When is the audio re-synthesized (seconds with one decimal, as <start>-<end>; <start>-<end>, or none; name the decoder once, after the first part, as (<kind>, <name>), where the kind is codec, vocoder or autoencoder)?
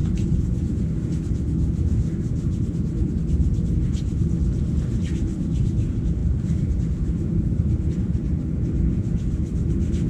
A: none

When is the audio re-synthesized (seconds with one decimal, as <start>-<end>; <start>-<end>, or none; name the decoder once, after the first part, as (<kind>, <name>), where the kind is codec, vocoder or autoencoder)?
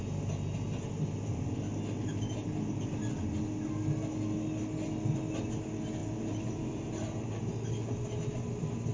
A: 6.0-7.5 (vocoder, BigVGAN v2)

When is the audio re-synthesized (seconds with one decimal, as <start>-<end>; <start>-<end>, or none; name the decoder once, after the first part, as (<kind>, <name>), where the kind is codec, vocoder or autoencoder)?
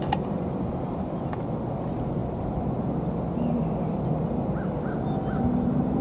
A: none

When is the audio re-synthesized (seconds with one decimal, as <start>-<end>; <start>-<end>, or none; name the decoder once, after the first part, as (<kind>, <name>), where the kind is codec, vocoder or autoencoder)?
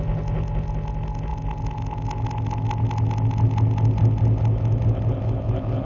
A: none